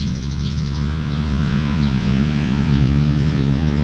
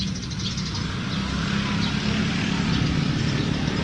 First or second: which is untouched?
second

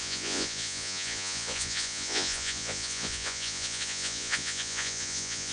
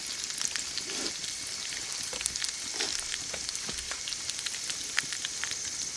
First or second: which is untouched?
second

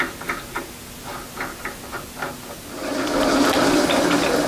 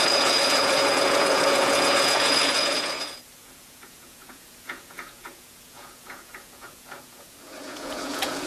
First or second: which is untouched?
first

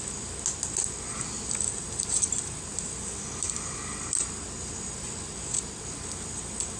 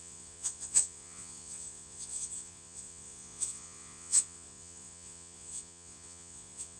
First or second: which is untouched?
first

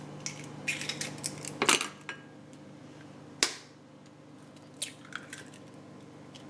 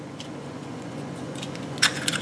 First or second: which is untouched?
first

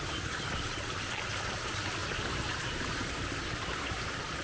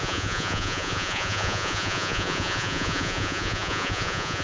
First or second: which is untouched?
first